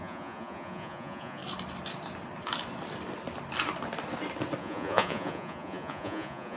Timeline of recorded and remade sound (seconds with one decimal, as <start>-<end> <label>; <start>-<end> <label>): 0.0-1.4 remade; 1.4-4.6 recorded; 4.6-6.6 remade